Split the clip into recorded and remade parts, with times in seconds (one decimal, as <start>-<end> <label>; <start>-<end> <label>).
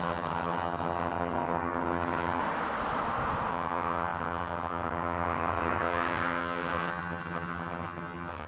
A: 0.0-2.4 remade; 2.4-3.5 recorded; 3.5-8.5 remade